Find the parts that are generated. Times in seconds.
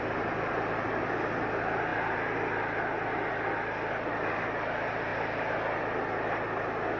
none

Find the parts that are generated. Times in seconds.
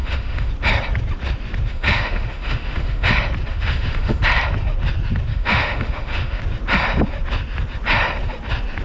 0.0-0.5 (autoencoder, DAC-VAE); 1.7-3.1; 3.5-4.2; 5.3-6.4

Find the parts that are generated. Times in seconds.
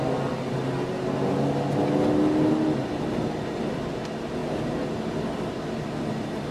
none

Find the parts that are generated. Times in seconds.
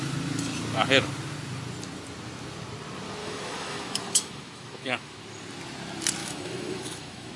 3.2-5.2 (autoencoder, DAC-VAE); 6.2-7.4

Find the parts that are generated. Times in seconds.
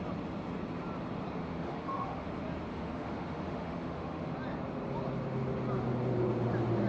1.4-2.3 (autoencoder, DAC-VAE); 2.7-4.3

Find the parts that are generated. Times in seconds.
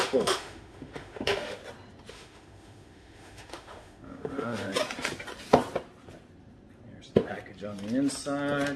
0.0-1.6 (autoencoder, DAC-VAE); 2.1-4.7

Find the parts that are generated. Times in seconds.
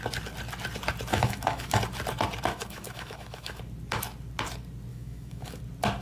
1.1-1.8 (autoencoder, DAC-VAE); 2.5-3.6; 4.9-5.6